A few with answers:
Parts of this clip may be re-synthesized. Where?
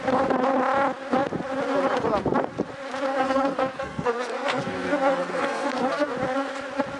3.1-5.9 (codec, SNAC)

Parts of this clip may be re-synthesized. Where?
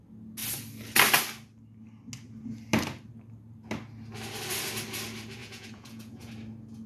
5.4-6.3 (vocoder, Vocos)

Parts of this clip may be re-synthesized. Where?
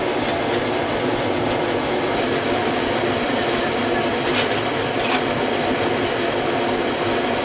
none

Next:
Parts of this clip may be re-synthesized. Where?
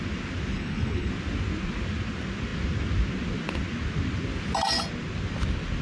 0.5-1.1 (codec, HILCodec)